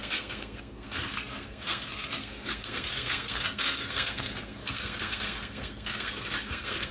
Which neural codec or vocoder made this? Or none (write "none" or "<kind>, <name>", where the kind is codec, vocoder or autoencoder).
codec, SNAC